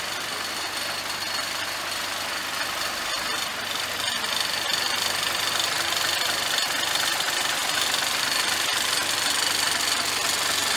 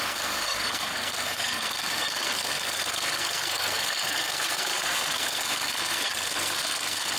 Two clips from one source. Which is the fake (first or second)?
second